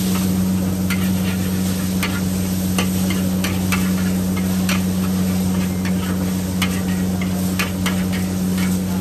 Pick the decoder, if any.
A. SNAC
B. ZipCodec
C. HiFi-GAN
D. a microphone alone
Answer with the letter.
D